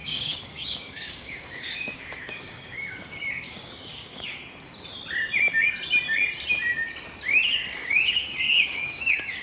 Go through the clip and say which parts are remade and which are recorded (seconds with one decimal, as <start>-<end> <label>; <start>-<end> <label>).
0.0-4.4 remade; 4.4-7.8 recorded; 7.8-9.4 remade